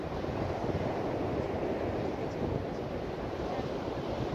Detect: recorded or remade recorded